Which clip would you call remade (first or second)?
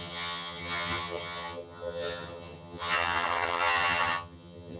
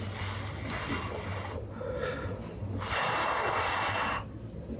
first